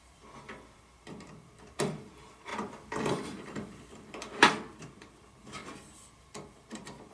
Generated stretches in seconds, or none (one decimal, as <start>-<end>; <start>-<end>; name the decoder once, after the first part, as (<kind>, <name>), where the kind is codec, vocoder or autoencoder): 0.0-7.1 (vocoder, BigVGAN v2)